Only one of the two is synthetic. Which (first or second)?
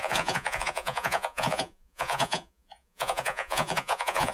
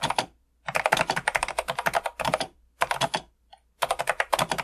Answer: first